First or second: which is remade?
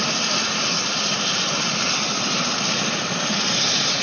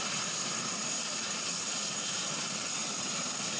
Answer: second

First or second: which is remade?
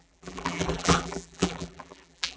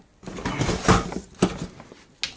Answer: first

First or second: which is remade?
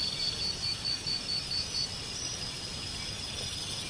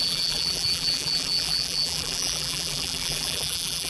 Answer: second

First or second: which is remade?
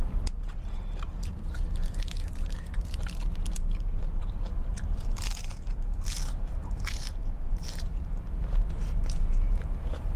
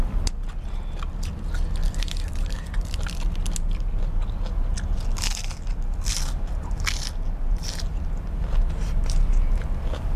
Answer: first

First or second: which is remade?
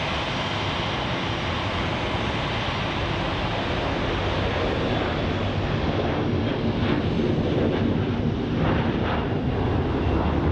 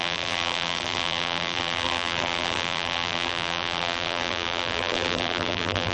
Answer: second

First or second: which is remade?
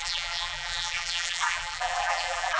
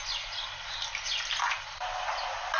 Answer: first